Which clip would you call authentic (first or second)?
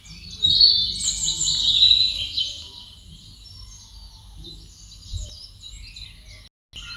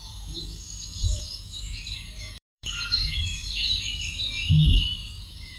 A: first